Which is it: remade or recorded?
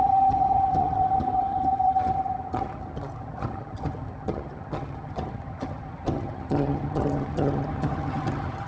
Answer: remade